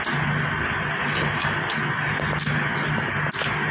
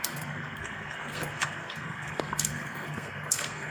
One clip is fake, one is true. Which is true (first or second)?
first